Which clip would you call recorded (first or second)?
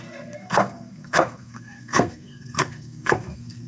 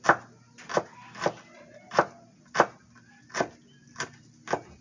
second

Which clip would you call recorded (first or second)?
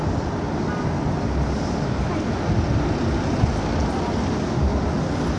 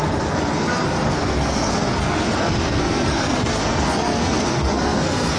first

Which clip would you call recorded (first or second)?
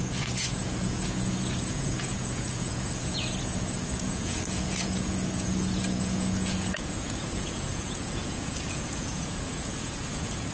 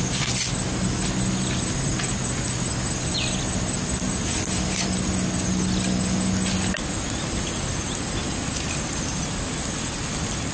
second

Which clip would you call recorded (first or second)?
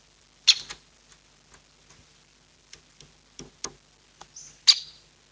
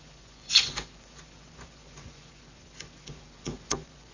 first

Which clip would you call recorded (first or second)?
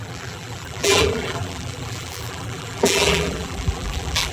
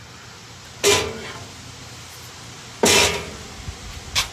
second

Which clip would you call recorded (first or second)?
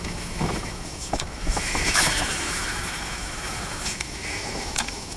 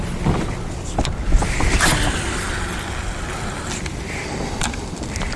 second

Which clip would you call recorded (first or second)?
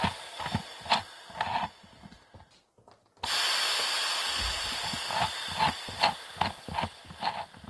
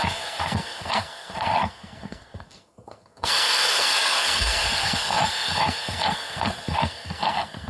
first